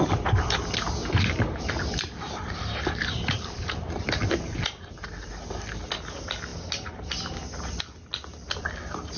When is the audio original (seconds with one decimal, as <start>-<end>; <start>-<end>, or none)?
0.0-1.0; 5.3-9.2

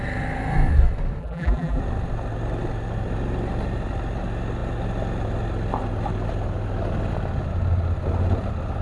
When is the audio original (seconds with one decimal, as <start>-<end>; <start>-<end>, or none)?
0.0-1.2; 1.8-8.8